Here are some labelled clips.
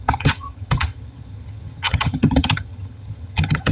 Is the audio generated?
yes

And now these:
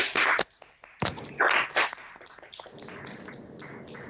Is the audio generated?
no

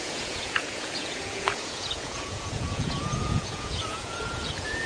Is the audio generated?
yes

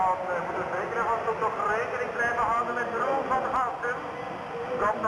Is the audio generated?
no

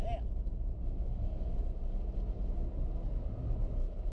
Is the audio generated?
no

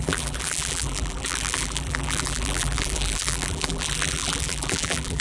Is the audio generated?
yes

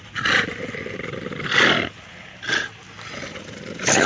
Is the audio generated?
no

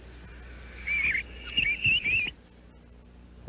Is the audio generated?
no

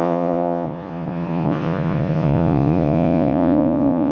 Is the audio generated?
yes